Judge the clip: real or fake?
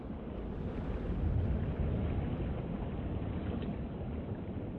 real